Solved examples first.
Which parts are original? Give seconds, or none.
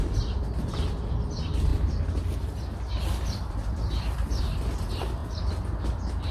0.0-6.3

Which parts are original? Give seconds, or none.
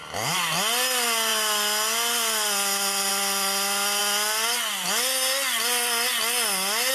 0.0-6.9